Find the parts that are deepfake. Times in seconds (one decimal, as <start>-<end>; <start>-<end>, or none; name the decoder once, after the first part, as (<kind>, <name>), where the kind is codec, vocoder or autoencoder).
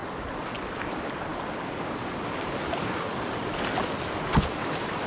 none